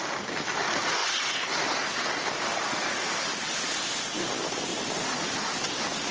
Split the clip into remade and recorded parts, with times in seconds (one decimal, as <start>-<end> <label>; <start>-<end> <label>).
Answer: 0.0-6.1 recorded

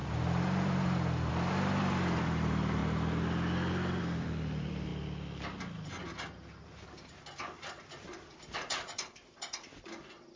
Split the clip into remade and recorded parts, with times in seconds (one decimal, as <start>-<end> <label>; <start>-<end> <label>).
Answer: 0.0-2.8 remade; 2.8-4.0 recorded; 4.0-4.9 remade; 4.9-7.8 recorded; 7.8-10.4 remade

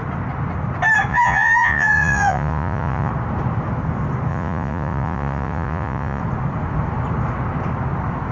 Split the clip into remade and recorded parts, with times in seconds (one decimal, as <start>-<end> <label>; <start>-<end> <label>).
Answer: 0.0-1.1 recorded; 1.1-3.1 remade; 3.1-4.3 recorded; 4.3-6.2 remade; 6.2-8.3 recorded

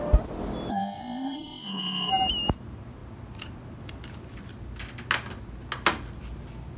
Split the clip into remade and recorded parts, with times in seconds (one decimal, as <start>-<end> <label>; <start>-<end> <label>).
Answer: 0.0-0.7 recorded; 0.7-2.1 remade; 2.1-6.8 recorded

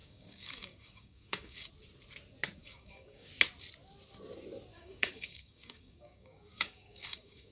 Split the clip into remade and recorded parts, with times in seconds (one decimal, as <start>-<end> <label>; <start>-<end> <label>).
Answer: 0.0-1.7 remade; 1.7-2.6 recorded; 2.6-3.3 remade; 3.3-4.7 recorded; 4.7-7.5 remade